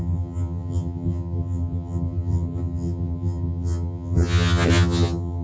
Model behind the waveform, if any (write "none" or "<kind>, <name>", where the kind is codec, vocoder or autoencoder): vocoder, HiFi-GAN